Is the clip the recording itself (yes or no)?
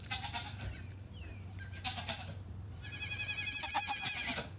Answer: no